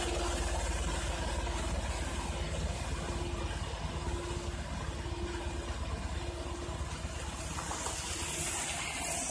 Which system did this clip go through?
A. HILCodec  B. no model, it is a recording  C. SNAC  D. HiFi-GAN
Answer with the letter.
B